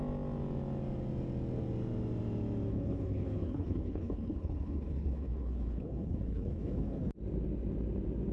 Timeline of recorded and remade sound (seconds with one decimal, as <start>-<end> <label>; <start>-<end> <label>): 0.0-2.7 recorded; 2.7-7.0 remade; 7.0-8.3 recorded